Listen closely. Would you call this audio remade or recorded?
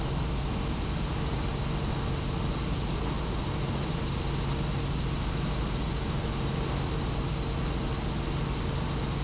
recorded